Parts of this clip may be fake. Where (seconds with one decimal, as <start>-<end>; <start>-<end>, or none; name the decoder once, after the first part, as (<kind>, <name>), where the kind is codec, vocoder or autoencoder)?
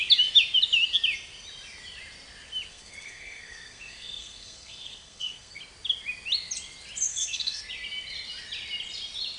2.7-5.6 (codec, SNAC); 7.1-7.6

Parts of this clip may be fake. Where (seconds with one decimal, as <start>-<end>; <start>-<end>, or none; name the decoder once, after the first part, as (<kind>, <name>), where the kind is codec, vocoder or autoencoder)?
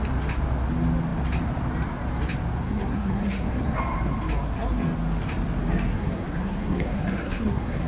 2.6-3.8 (codec, SNAC); 5.9-7.9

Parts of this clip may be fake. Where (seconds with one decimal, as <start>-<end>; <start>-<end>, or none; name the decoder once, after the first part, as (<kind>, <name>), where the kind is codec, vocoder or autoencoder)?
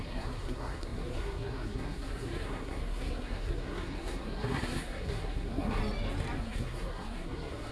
0.0-5.8 (codec, SNAC); 6.4-7.7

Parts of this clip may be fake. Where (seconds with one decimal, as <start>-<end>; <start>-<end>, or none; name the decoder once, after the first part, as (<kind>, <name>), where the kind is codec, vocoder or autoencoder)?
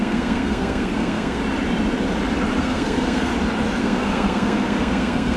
0.0-1.4 (codec, SNAC); 2.6-3.3; 3.8-5.4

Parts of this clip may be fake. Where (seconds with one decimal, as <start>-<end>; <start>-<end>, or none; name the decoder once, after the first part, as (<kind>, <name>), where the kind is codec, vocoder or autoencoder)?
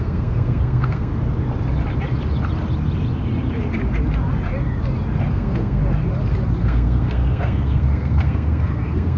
0.0-1.1 (codec, SNAC); 5.3-5.8; 6.6-9.2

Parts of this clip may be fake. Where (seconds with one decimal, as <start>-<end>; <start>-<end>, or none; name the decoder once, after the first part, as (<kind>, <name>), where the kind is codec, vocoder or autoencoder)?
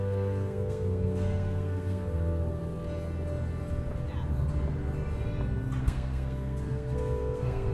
0.0-2.6 (codec, SNAC); 5.8-7.7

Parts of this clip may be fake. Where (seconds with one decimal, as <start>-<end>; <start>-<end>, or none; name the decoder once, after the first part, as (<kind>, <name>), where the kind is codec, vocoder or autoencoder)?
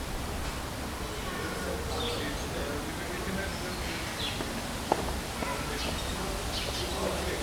none